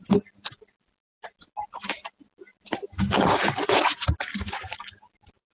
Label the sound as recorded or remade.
recorded